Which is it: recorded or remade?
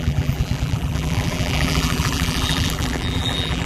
remade